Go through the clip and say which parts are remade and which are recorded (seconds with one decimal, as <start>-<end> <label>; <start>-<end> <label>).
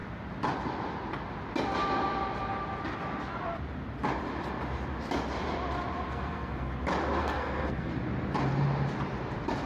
0.0-6.1 recorded; 6.1-6.7 remade; 6.7-7.2 recorded; 7.2-7.9 remade; 7.9-9.7 recorded